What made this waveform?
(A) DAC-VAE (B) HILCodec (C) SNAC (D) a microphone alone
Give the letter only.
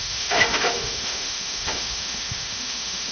A